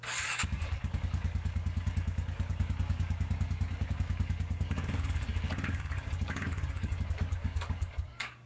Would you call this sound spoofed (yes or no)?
yes